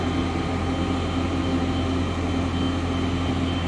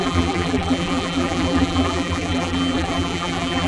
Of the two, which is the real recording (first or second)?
first